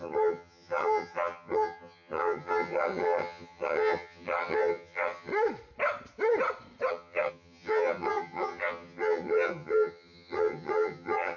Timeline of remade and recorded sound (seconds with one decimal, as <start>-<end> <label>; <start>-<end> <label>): 0.0-5.3 remade; 5.3-6.9 recorded; 6.9-11.4 remade